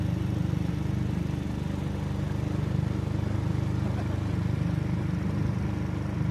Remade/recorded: recorded